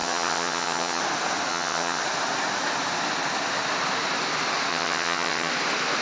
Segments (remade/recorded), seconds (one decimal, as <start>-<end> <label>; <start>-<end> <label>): 0.0-1.0 remade; 1.0-1.5 recorded; 1.5-2.0 remade; 2.0-4.7 recorded; 4.7-5.5 remade; 5.5-6.0 recorded